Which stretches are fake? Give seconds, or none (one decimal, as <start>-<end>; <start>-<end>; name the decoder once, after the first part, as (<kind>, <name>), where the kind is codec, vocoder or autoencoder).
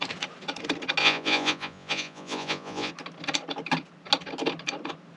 1.0-2.9 (vocoder, Vocos)